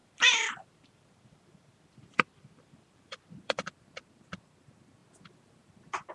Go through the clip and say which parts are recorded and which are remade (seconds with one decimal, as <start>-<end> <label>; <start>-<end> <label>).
0.0-3.7 remade; 3.7-6.1 recorded